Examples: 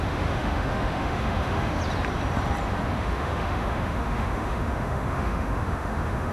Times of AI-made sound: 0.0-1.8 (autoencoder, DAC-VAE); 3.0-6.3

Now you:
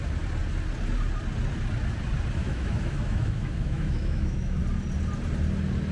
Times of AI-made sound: 2.4-4.6 (autoencoder, DAC-VAE)